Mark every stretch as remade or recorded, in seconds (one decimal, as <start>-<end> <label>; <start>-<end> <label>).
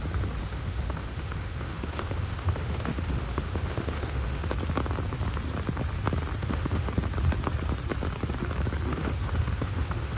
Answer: 0.0-0.4 recorded; 0.4-4.5 remade; 4.5-6.4 recorded; 6.4-6.9 remade; 6.9-8.9 recorded; 8.9-10.2 remade